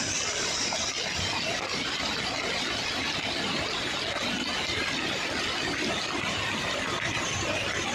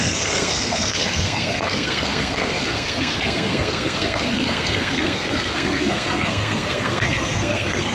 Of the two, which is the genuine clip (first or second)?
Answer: first